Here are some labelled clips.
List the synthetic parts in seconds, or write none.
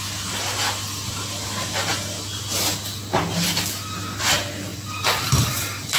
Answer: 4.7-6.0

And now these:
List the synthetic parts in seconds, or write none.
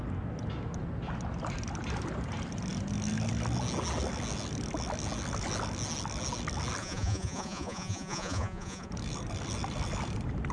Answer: 6.8-8.9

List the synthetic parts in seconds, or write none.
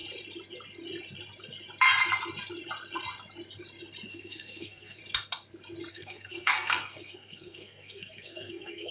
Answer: 4.1-5.0; 5.9-8.9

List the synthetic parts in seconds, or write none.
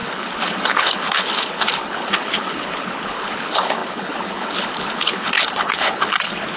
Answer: 0.0-6.6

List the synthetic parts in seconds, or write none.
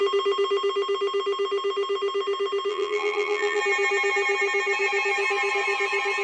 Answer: 2.7-3.6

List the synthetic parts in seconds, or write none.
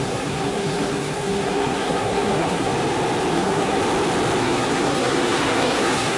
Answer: 0.0-2.7; 3.3-3.8; 4.4-6.2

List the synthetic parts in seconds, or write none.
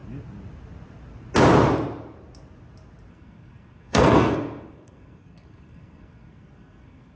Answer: 3.1-7.2